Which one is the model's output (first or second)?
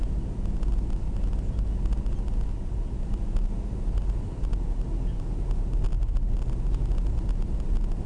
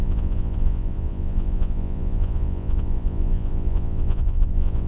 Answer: second